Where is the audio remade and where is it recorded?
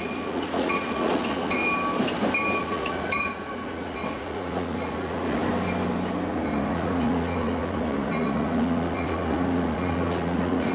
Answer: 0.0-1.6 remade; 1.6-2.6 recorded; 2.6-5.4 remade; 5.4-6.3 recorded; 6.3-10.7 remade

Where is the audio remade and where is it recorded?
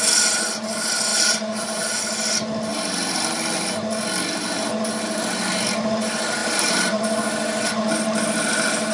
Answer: 0.0-1.1 recorded; 1.1-2.0 remade; 2.0-6.4 recorded; 6.4-7.0 remade; 7.0-8.9 recorded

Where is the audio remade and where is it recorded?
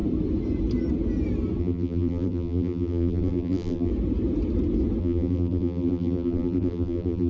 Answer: 0.0-1.6 recorded; 1.6-3.9 remade; 3.9-5.0 recorded; 5.0-7.3 remade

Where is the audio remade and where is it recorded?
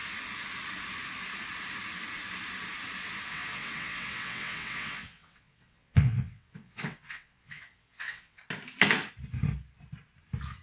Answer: 0.0-3.3 recorded; 3.3-8.4 remade; 8.4-10.6 recorded